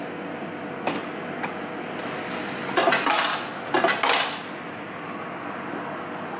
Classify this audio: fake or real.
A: real